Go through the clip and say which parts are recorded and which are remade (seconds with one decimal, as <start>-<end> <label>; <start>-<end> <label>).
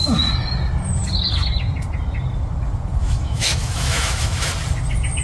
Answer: 0.0-3.0 recorded; 3.0-4.5 remade; 4.5-5.2 recorded